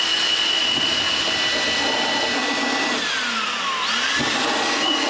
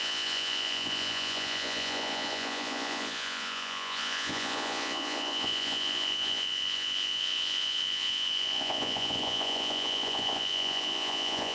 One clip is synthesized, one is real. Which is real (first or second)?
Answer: first